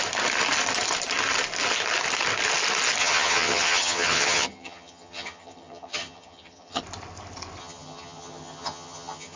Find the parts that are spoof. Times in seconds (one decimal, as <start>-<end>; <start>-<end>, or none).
3.0-6.8; 7.6-9.4